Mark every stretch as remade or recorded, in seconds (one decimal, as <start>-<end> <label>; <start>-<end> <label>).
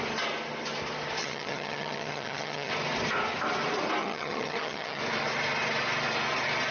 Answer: 0.0-1.2 recorded; 1.2-2.7 remade; 2.7-4.0 recorded; 4.0-5.0 remade; 5.0-6.7 recorded